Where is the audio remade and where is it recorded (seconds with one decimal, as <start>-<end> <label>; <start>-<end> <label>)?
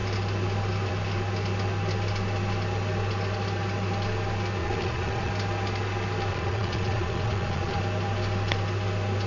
0.0-4.6 recorded; 4.6-5.3 remade; 5.3-6.3 recorded; 6.3-7.8 remade; 7.8-9.3 recorded